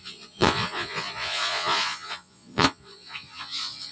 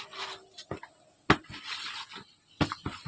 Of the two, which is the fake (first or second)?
first